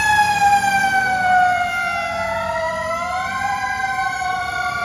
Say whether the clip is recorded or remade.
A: remade